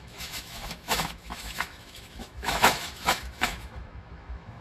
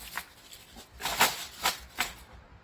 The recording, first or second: second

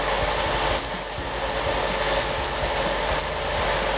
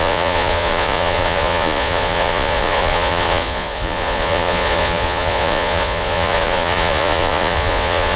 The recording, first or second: first